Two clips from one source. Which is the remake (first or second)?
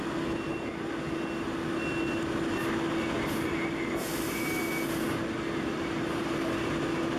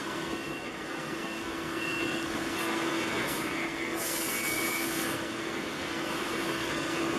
second